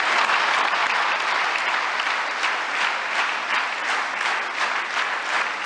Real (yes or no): yes